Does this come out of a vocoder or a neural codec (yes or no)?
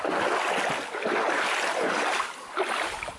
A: no